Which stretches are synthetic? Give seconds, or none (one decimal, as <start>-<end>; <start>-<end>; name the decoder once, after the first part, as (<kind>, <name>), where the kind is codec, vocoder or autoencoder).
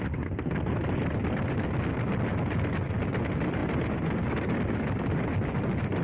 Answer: none